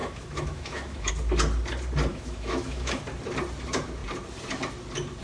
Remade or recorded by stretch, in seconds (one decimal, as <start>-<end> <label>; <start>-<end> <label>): 0.0-1.1 remade; 1.1-2.1 recorded; 2.1-3.0 remade; 3.0-5.2 recorded